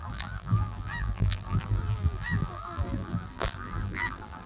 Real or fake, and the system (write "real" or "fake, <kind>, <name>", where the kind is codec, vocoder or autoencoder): fake, vocoder, BigVGAN v2